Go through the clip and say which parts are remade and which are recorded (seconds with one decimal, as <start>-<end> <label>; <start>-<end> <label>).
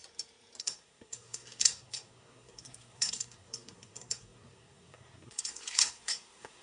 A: 0.0-0.6 recorded; 0.6-6.6 remade